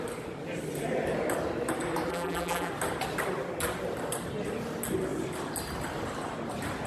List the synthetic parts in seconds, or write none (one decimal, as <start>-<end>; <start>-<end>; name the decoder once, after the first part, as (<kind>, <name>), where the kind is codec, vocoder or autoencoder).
2.1-2.7 (vocoder, BigVGAN v2)